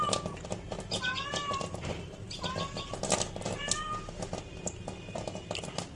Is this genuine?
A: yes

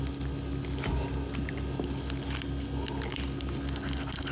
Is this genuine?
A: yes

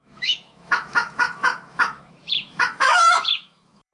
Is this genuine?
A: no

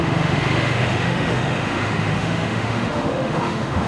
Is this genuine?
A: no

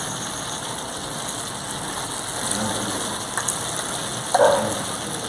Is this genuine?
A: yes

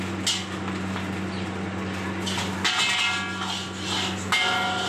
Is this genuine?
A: yes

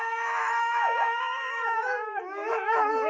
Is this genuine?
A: no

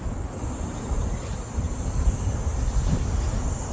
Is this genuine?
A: yes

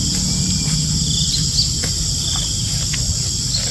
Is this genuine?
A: yes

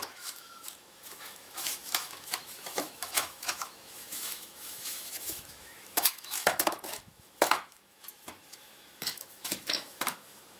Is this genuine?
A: no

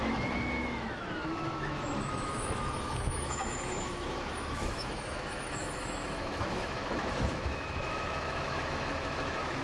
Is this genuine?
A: no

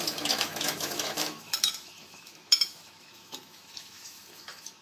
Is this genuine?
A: no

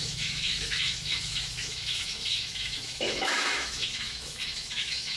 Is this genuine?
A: no